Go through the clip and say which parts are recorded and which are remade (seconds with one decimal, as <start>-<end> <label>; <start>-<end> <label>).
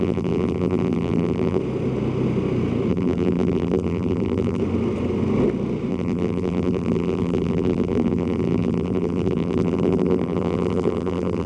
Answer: 0.0-1.6 remade; 1.6-2.9 recorded; 2.9-4.6 remade; 4.6-5.9 recorded; 5.9-11.5 remade